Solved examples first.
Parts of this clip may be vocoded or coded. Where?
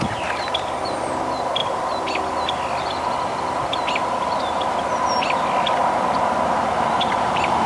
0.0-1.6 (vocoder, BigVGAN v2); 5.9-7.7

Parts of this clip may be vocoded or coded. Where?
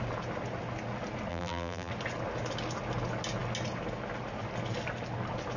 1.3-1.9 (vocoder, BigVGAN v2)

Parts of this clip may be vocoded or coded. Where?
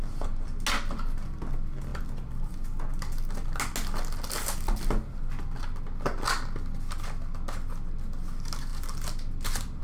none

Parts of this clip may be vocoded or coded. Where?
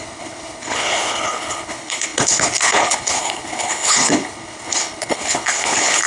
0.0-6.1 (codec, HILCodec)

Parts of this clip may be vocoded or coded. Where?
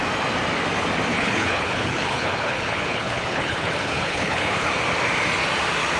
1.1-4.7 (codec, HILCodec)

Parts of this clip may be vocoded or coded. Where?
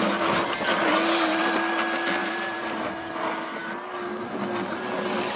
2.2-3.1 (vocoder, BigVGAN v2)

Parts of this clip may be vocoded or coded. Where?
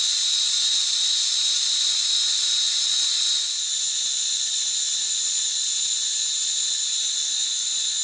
none